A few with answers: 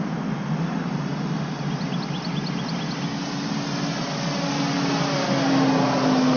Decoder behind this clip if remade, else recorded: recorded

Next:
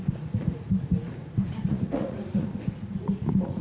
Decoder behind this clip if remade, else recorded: remade, vocoder, Vocos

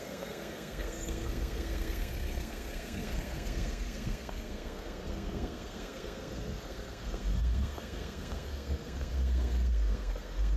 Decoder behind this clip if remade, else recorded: remade, codec, SNAC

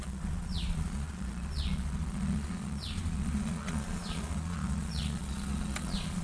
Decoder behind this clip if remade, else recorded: remade, vocoder, Vocos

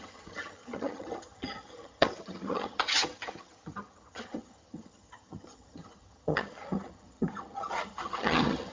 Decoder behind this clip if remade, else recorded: remade, vocoder, HiFi-GAN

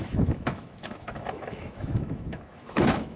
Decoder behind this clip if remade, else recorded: remade, autoencoder, DAC-VAE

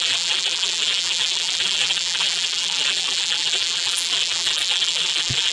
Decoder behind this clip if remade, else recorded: remade, vocoder, BigVGAN v2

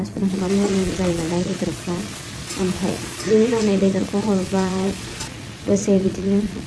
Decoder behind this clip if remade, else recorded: remade, vocoder, Vocos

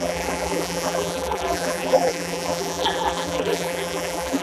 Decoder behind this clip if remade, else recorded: remade, vocoder, BigVGAN v2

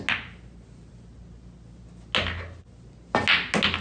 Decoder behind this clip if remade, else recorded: recorded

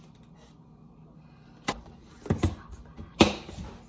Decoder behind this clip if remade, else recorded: recorded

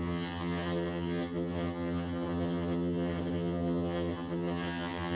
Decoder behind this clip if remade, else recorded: remade, vocoder, HiFi-GAN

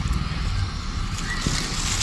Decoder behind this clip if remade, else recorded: recorded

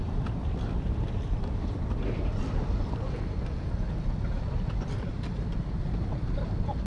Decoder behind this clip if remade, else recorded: recorded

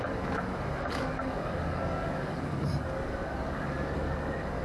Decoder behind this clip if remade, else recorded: remade, codec, DAC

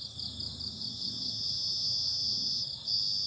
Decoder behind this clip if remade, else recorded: recorded